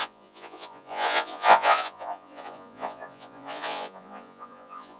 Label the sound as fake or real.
fake